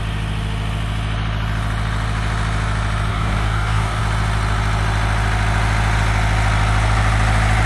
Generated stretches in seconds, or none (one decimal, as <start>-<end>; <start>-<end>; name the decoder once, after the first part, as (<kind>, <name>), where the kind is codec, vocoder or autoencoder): 3.1-4.0 (codec, DAC)